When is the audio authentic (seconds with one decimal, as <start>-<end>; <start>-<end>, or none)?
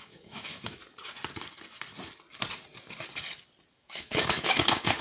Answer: 0.8-3.7